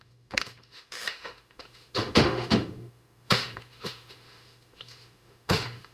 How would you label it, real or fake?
fake